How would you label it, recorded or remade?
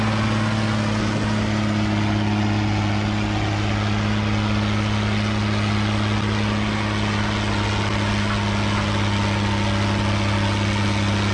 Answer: recorded